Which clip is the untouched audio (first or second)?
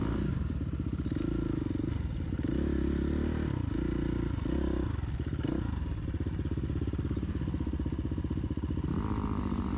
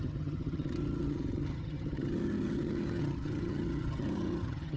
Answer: first